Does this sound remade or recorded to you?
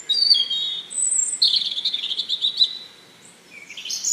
recorded